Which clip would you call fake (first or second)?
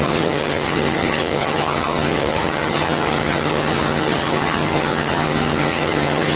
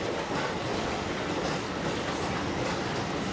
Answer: first